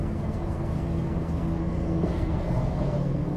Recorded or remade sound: remade